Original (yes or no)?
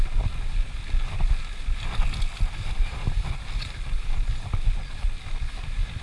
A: yes